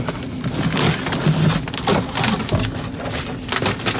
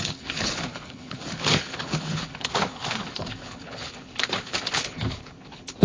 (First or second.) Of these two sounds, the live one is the first